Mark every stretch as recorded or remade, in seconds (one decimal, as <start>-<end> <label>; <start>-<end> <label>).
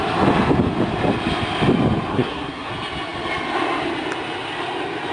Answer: 0.0-2.1 recorded; 2.1-2.7 remade; 2.7-5.1 recorded